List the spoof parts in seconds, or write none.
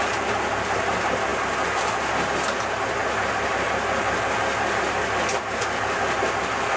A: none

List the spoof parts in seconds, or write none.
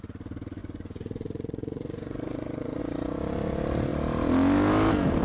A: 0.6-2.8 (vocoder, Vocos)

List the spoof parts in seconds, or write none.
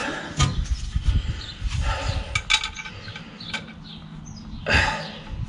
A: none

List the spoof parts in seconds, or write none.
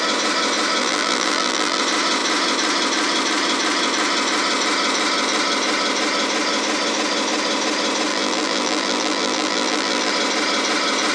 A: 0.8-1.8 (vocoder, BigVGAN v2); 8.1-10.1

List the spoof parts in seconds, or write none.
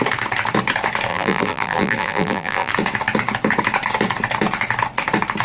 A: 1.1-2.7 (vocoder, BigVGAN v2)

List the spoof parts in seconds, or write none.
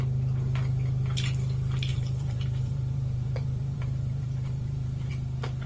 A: 1.9-5.1 (vocoder, BigVGAN v2)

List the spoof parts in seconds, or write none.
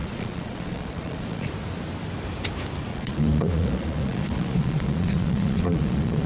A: 0.0-1.5 (vocoder, Vocos); 2.9-6.3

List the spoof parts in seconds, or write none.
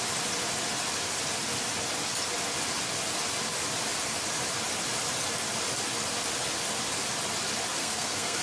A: 7.8-8.4 (codec, SNAC)